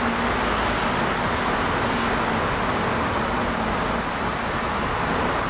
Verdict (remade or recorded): recorded